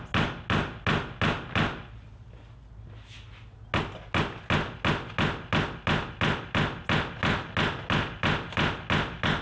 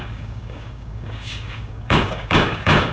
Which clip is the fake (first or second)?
second